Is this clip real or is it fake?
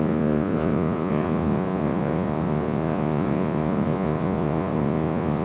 fake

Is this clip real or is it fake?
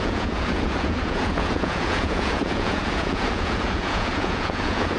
fake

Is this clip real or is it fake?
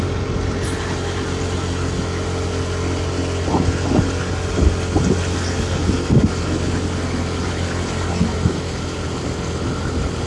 real